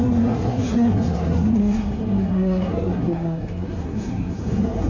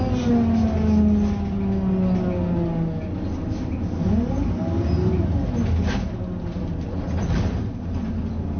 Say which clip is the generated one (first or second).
first